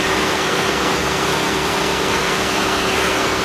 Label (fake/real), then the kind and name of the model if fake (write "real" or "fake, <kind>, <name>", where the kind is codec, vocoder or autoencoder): fake, codec, SNAC